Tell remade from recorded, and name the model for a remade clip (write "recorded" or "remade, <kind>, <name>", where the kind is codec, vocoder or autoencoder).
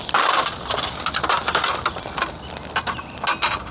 recorded